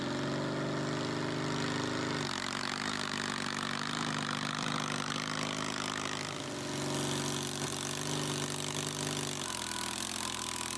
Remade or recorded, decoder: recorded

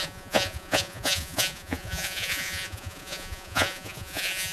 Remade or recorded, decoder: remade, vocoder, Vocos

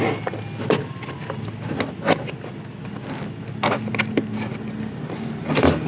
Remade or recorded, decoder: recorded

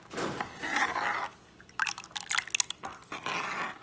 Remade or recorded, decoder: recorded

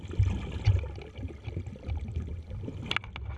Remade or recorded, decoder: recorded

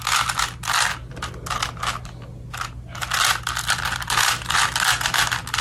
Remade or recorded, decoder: recorded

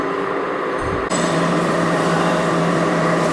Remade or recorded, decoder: remade, vocoder, BigVGAN v2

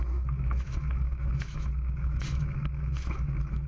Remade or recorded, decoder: remade, autoencoder, DAC-VAE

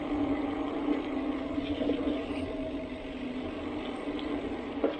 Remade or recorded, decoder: recorded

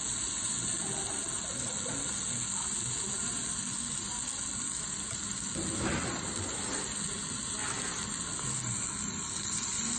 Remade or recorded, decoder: recorded